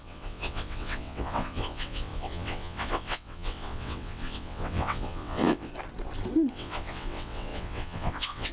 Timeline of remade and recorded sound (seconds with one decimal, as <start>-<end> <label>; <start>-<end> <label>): 0.0-5.7 remade; 5.7-6.5 recorded; 6.5-8.5 remade

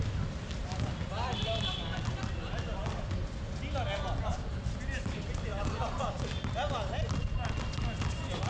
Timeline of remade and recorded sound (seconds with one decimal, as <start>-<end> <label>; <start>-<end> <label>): 0.0-8.5 recorded

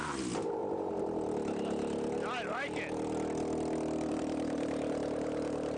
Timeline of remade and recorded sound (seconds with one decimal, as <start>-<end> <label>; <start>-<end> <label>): 0.0-0.6 remade; 0.6-4.1 recorded; 4.1-5.8 remade

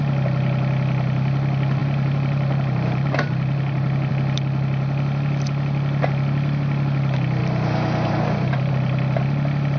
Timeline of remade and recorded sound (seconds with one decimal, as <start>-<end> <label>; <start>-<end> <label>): 0.0-1.8 recorded; 1.8-4.1 remade; 4.1-7.4 recorded; 7.4-8.7 remade; 8.7-9.8 recorded

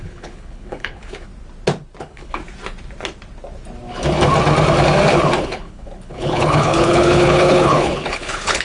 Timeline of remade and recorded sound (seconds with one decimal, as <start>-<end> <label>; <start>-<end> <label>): 0.0-1.3 remade; 1.3-2.0 recorded; 2.0-2.4 remade; 2.4-5.4 recorded; 5.4-8.6 remade

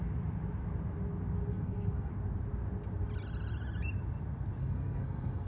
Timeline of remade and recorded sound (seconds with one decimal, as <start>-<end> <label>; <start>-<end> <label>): 0.0-1.5 recorded; 1.5-2.1 remade; 2.1-4.6 recorded; 4.6-5.5 remade

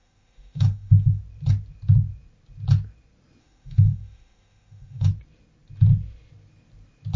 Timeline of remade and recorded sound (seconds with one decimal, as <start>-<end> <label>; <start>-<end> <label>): 0.0-1.2 remade; 1.2-3.4 recorded; 3.4-5.1 remade; 5.1-7.2 recorded